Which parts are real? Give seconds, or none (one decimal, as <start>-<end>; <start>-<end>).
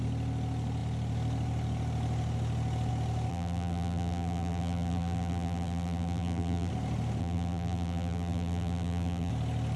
0.0-3.3; 6.7-7.2; 9.3-9.8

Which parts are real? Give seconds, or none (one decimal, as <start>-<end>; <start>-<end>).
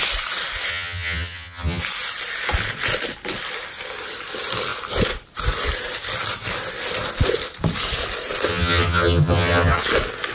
0.0-0.7; 1.8-8.5; 9.8-10.3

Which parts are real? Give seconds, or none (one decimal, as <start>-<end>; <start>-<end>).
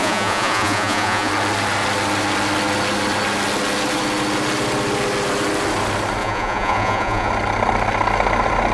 1.3-6.2; 7.3-8.7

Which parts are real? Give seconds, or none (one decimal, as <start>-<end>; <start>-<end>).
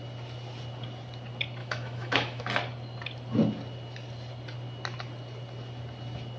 0.0-1.6; 2.4-6.4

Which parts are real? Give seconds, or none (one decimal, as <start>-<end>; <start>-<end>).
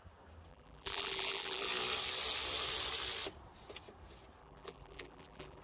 0.0-0.5; 1.7-4.4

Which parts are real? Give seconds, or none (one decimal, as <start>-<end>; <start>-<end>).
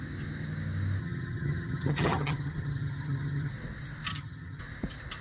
0.0-1.0; 3.5-4.1; 4.6-5.2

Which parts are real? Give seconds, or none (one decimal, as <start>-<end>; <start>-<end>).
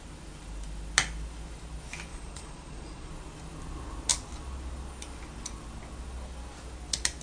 0.0-2.1; 3.1-7.2